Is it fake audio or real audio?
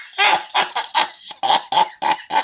real